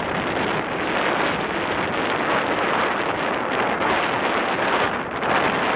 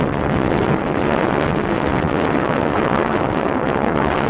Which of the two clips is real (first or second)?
first